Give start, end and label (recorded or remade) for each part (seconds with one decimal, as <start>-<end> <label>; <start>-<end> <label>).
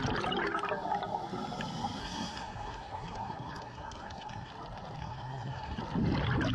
0.0-2.0 recorded; 2.0-4.5 remade; 4.5-5.0 recorded; 5.0-5.8 remade; 5.8-6.5 recorded